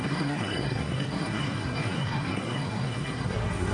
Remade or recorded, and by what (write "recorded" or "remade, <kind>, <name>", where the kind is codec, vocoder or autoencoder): remade, codec, SNAC